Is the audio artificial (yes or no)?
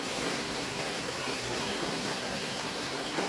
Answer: yes